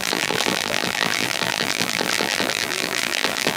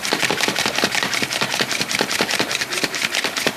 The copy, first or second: first